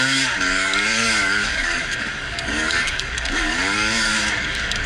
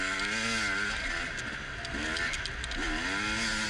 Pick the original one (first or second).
second